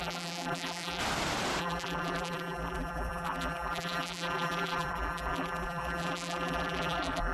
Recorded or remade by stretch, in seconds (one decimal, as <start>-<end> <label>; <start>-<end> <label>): 0.0-1.0 remade; 1.0-1.6 recorded; 1.6-7.3 remade